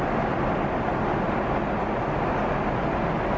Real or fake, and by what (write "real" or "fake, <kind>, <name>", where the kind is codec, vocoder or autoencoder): real